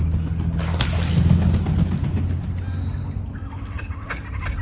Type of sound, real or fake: real